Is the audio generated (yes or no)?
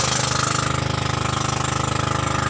no